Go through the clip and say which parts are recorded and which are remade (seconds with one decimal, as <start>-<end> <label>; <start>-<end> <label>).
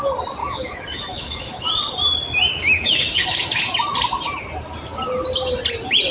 0.0-0.4 recorded; 0.4-1.7 remade; 1.7-2.5 recorded; 2.5-3.6 remade; 3.6-6.1 recorded